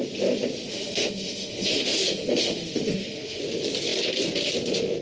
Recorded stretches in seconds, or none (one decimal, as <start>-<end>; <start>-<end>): 0.0-0.7; 3.4-5.0